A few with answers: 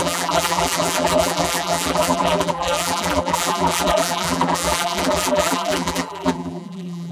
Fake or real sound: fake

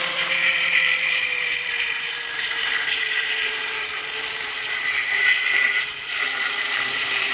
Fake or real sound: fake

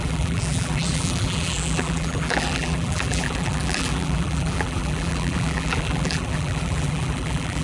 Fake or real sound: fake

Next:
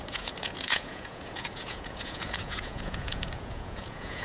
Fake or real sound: fake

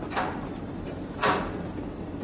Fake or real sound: fake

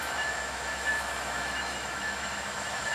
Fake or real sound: fake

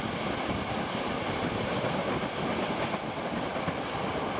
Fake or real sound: real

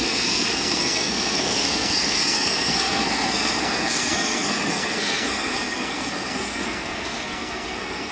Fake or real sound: fake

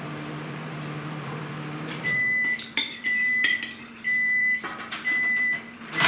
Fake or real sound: fake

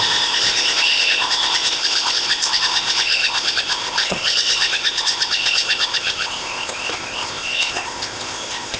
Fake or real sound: fake